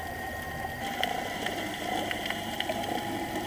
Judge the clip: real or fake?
fake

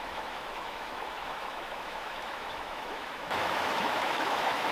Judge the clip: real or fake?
fake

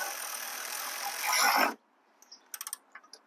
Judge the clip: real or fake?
real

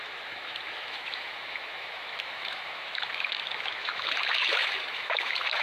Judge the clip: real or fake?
fake